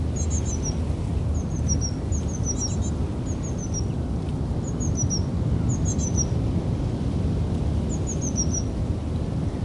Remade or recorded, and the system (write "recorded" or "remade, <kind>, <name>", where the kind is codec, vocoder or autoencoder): recorded